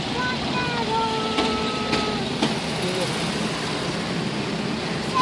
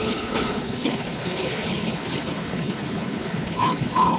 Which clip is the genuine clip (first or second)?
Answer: first